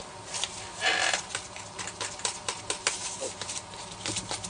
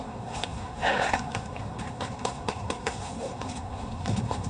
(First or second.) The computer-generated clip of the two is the second